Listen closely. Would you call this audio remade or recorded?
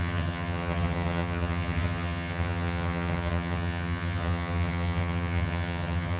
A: remade